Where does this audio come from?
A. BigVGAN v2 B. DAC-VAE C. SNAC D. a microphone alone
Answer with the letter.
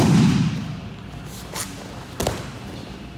D